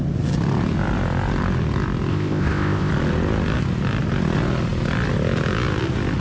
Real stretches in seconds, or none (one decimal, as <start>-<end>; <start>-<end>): 0.0-2.1; 2.9-6.2